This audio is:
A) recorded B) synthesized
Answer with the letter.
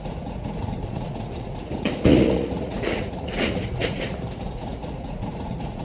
B